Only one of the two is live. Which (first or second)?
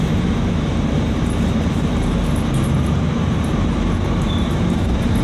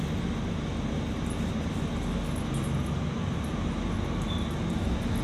second